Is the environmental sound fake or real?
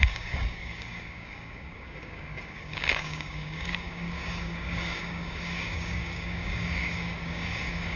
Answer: fake